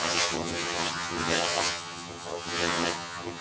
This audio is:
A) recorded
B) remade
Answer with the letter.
B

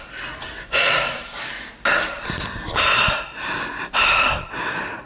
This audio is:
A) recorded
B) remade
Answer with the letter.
A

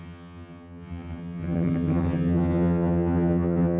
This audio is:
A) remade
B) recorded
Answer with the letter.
A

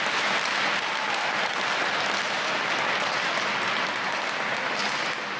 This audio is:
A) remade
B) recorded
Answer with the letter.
B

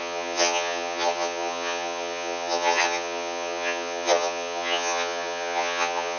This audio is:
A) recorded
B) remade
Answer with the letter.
B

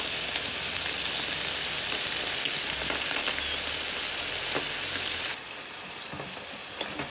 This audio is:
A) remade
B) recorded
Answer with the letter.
B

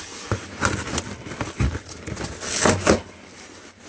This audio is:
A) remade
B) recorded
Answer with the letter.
B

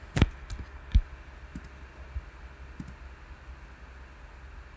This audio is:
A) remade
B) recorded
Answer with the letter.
B